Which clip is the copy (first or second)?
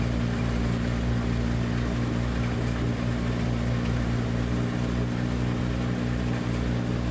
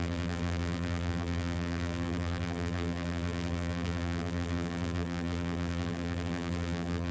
second